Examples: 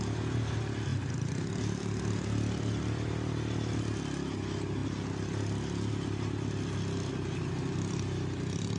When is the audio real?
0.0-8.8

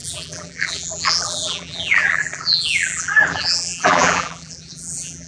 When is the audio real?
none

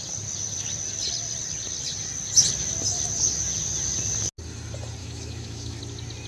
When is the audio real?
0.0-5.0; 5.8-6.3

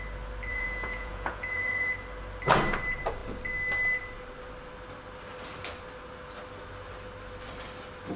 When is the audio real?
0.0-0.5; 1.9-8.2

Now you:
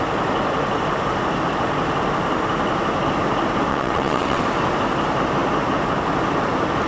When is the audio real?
0.0-3.7; 4.4-6.9

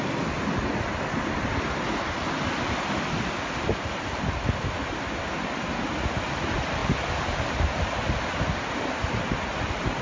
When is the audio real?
0.0-10.0